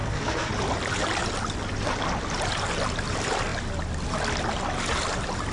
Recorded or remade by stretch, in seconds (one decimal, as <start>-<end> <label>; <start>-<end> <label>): 0.0-0.5 remade; 0.5-5.5 recorded